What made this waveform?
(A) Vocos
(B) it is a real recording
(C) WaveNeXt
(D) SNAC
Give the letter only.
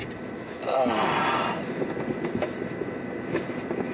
B